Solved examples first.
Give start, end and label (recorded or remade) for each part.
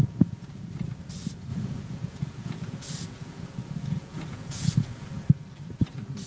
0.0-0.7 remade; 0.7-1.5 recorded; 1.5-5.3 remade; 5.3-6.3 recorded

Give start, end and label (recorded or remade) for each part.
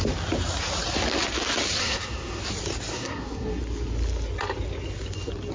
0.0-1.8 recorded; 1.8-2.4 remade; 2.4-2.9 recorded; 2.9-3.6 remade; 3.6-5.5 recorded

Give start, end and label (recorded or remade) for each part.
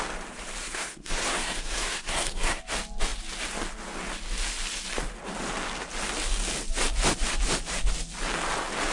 0.0-0.6 recorded; 0.6-2.6 remade; 2.6-8.9 recorded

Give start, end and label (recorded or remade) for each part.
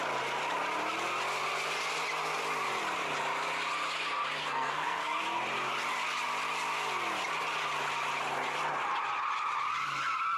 0.0-4.4 recorded; 4.4-5.2 remade; 5.2-10.4 recorded